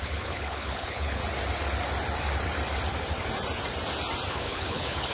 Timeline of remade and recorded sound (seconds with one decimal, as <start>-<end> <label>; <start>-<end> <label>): 0.0-1.2 remade; 1.2-4.3 recorded; 4.3-5.1 remade